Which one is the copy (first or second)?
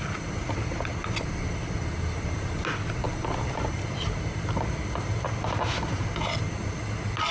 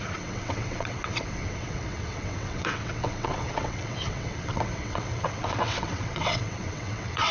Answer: second